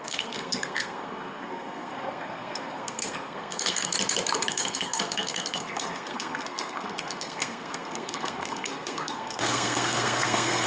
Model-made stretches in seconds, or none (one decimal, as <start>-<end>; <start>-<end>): 0.0-3.9; 4.5-10.7